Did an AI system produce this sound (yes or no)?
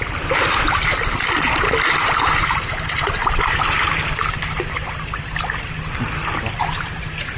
no